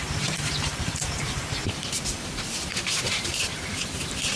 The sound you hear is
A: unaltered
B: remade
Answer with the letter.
B